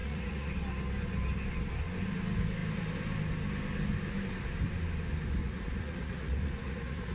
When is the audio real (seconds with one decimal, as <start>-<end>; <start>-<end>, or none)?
0.5-5.4